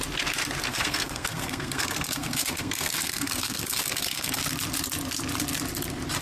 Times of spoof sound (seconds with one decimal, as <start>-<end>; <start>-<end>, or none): 0.7-4.4